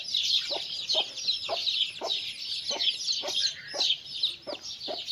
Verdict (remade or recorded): recorded